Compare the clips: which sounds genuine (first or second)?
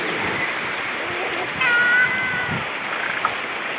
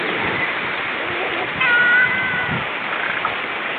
first